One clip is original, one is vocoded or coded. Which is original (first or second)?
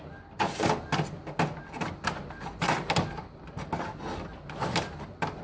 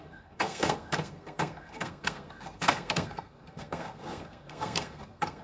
first